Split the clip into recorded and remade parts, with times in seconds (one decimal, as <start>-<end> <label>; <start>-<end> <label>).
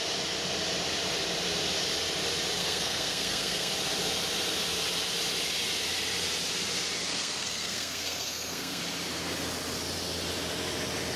0.0-2.6 recorded; 2.6-3.7 remade; 3.7-7.1 recorded; 7.1-8.8 remade; 8.8-11.2 recorded